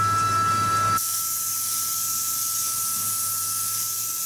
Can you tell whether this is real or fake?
real